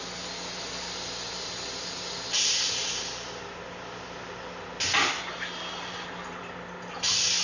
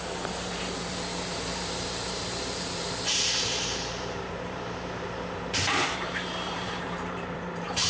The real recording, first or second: first